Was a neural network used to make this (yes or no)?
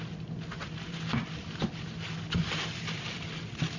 no